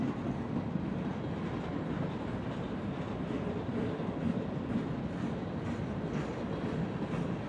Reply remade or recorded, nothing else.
recorded